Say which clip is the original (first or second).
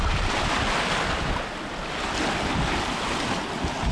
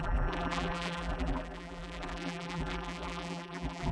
first